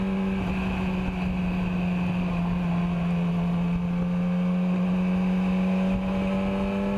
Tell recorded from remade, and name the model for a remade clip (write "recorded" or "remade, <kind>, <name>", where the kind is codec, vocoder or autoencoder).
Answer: recorded